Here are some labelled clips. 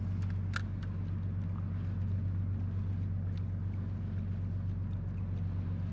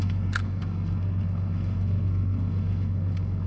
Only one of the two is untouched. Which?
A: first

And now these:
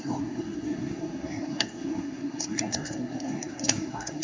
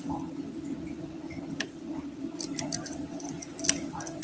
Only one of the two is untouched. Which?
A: second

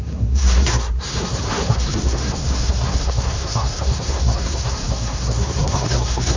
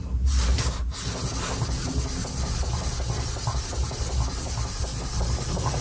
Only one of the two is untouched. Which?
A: second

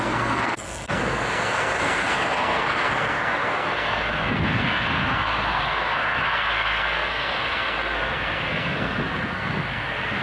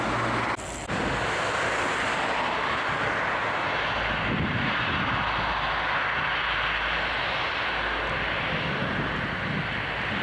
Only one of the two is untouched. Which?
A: second